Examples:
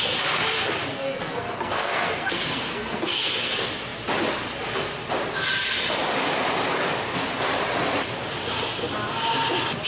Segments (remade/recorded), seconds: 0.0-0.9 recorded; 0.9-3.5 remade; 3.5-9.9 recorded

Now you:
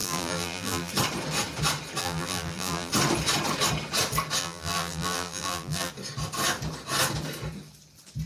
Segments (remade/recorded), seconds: 0.0-0.9 remade; 0.9-2.0 recorded; 2.0-2.9 remade; 2.9-4.4 recorded; 4.4-5.9 remade; 5.9-8.3 recorded